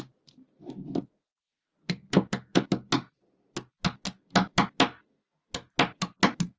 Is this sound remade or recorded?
recorded